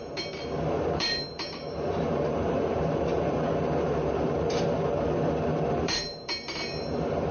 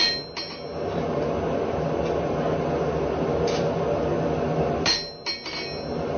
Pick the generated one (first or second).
first